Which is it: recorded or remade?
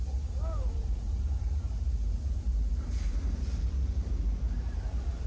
remade